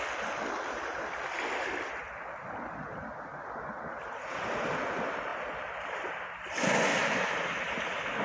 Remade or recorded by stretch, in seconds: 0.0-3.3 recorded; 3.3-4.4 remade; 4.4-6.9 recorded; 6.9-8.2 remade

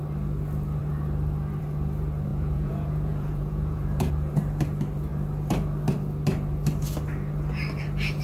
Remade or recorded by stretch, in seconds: 0.0-2.3 recorded; 2.3-4.1 remade; 4.1-8.2 recorded